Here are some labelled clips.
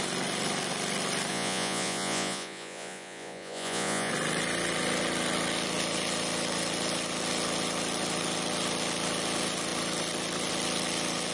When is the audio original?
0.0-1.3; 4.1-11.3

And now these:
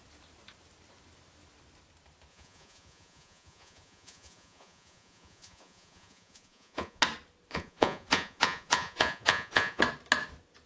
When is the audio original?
0.0-2.3; 7.0-7.5; 9.8-10.7